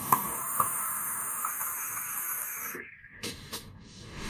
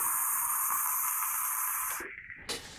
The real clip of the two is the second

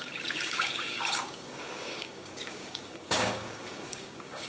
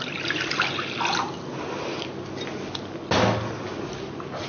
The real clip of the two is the second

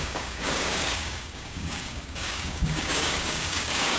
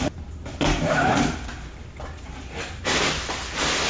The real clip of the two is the second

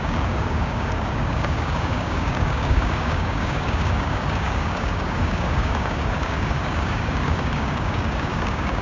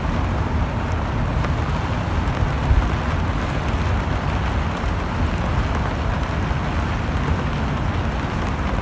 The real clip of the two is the second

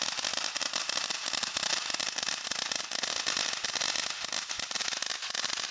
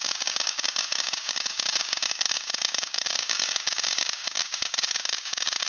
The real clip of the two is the first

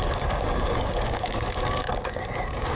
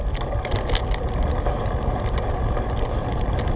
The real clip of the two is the second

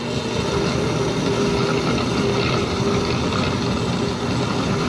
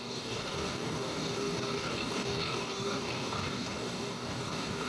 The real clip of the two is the first